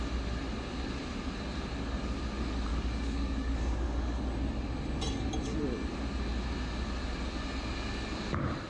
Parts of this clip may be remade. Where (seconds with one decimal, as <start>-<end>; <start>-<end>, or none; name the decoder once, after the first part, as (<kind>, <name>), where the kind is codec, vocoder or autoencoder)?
2.7-4.2 (codec, DAC)